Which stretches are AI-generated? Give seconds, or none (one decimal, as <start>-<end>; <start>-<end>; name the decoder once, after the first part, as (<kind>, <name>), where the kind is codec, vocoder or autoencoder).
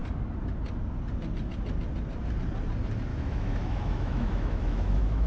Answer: 3.1-5.3 (autoencoder, DAC-VAE)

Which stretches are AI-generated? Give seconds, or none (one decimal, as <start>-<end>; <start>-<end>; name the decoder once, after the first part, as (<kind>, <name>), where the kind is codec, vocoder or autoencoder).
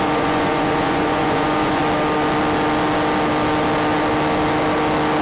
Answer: 0.0-1.8 (vocoder, Vocos)